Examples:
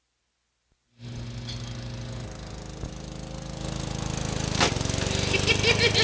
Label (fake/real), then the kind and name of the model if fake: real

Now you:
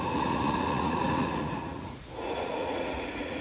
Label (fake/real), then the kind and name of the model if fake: fake, vocoder, Vocos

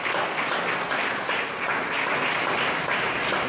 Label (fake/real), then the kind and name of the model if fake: real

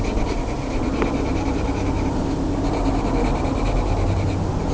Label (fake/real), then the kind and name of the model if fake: real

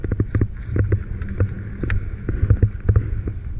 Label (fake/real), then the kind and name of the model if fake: real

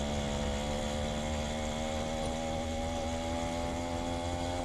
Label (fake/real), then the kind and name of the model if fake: real